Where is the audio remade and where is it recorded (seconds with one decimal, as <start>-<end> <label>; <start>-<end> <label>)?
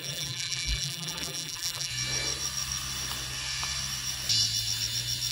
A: 0.0-1.9 remade; 1.9-5.3 recorded